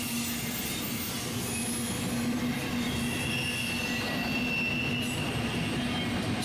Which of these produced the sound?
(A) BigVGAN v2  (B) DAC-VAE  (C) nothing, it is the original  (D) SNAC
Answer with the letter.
C